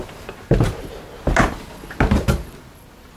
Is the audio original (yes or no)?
yes